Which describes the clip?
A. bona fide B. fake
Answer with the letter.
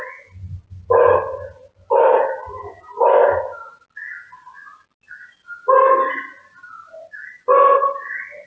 A